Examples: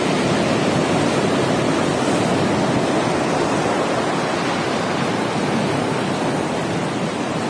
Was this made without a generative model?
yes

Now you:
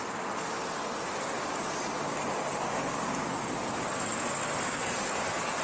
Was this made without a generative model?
yes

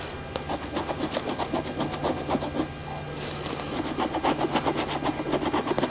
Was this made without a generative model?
yes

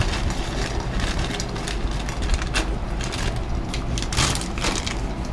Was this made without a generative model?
yes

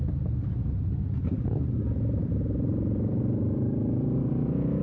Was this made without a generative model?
no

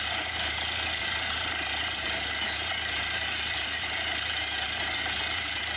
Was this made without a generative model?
no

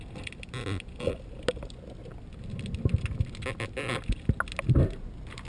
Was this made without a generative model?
yes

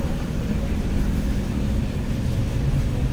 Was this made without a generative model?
yes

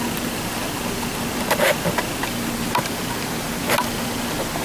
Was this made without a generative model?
yes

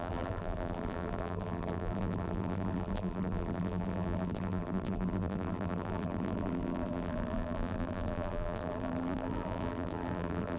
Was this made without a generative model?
no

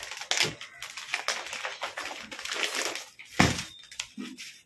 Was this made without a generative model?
yes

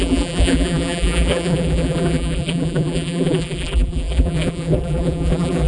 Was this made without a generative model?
no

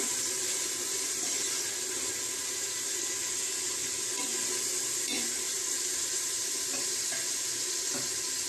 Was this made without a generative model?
yes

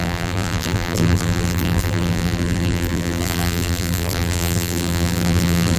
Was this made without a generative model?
no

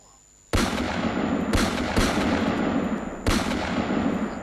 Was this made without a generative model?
yes